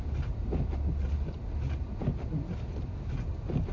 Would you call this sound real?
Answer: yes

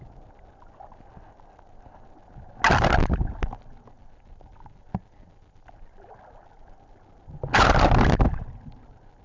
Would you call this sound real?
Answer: yes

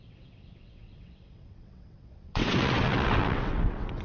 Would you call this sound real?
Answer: no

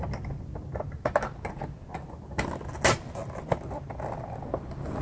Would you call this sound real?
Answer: yes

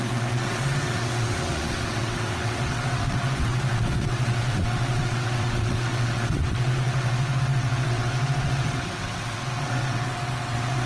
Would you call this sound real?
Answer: no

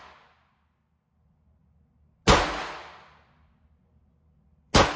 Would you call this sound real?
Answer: yes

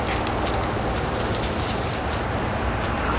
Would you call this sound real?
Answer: yes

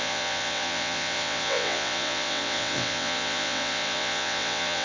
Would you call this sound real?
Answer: no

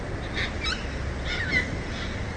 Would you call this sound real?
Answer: yes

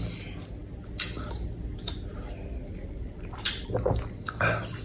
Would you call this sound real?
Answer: yes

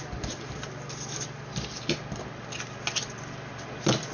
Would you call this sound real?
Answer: yes